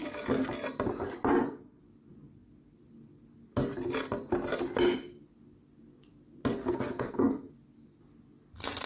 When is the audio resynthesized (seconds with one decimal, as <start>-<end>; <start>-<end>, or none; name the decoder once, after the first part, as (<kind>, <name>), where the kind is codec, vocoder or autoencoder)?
1.3-1.8 (codec, SNAC); 6.6-7.5